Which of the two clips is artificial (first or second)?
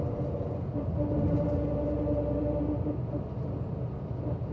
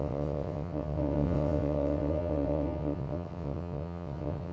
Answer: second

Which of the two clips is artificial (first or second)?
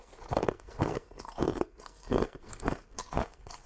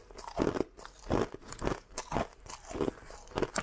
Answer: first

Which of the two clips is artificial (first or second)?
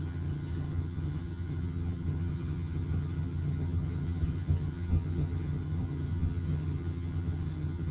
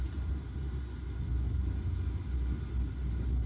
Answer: first